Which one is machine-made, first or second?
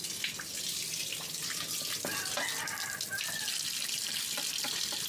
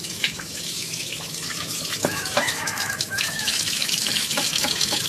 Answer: second